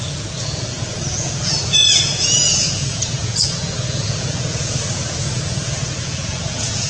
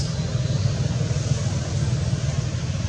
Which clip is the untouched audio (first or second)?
second